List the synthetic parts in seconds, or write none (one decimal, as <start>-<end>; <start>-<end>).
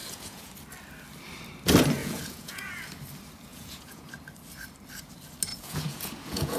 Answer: 0.0-0.5; 2.0-3.0; 3.5-4.1; 5.5-6.6